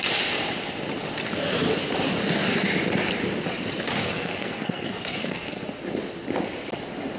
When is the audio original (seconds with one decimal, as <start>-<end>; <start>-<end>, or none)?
0.0-4.0; 5.6-7.2